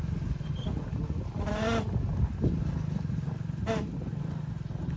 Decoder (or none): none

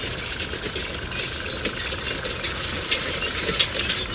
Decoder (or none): none